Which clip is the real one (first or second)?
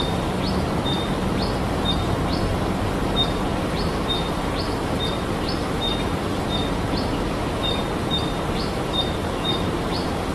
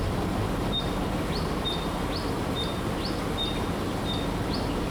second